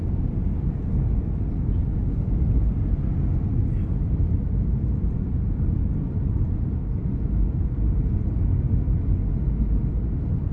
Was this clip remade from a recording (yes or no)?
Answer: no